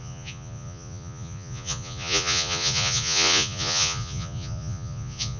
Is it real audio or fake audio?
fake